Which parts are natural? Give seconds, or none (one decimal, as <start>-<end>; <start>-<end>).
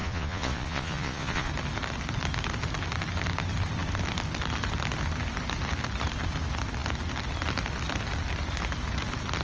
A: 1.5-9.4